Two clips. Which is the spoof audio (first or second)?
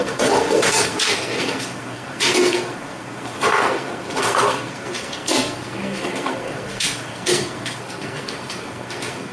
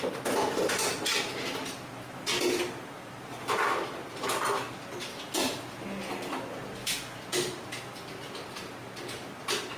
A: first